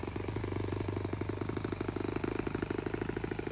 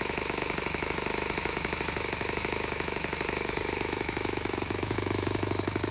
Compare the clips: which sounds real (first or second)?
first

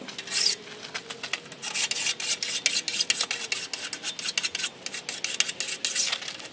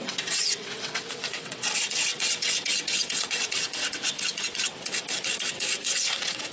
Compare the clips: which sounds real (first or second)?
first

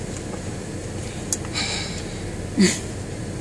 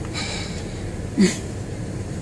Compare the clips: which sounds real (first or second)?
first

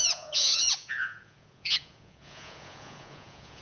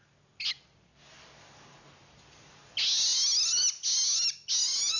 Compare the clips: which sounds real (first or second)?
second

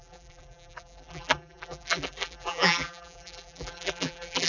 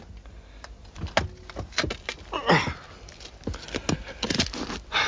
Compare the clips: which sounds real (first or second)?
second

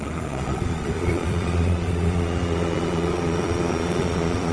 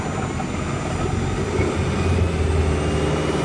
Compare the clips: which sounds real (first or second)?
second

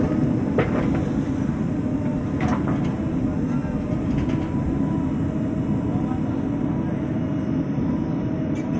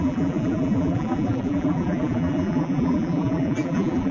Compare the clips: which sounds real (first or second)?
first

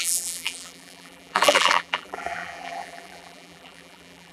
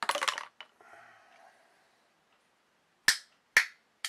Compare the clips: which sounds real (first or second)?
second